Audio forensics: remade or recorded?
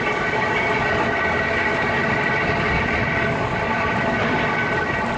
recorded